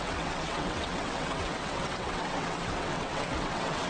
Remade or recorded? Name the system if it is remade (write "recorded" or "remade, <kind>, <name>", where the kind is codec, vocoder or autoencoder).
remade, vocoder, WaveNeXt